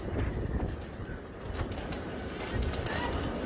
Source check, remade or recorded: recorded